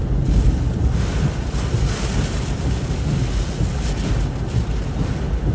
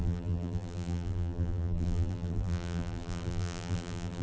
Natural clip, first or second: first